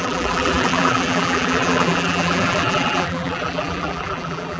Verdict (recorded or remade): remade